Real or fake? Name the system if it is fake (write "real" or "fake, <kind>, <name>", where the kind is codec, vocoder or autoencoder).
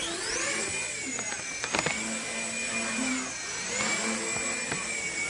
real